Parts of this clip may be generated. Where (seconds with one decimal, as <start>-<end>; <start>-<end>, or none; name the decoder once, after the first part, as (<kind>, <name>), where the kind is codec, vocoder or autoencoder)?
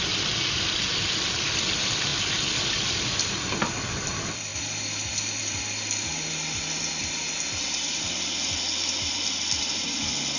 none